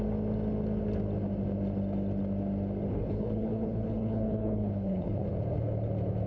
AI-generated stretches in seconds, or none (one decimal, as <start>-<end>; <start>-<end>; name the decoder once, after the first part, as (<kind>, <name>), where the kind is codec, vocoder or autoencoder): 2.9-5.3 (codec, HILCodec)